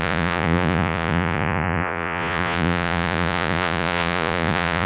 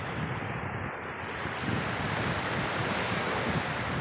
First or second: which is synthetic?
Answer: first